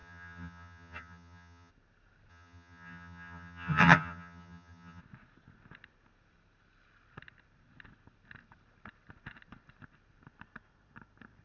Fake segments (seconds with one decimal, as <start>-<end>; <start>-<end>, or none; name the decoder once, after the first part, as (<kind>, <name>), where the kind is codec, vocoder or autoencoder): 0.0-1.7 (vocoder, HiFi-GAN); 2.3-5.0